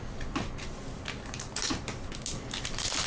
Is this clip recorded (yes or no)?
yes